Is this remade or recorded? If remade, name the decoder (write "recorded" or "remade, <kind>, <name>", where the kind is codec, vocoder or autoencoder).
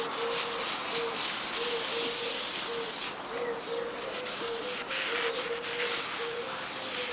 recorded